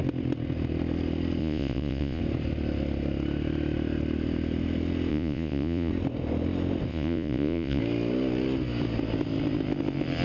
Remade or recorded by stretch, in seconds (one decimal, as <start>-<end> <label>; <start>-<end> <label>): 0.0-1.4 recorded; 1.4-2.2 remade; 2.2-5.1 recorded; 5.1-5.9 remade; 5.9-6.9 recorded; 6.9-7.8 remade; 7.8-10.2 recorded

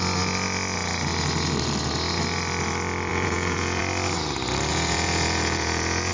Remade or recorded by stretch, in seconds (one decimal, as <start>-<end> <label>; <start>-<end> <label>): 0.0-3.1 recorded; 3.1-3.8 remade; 3.8-4.7 recorded; 4.7-6.1 remade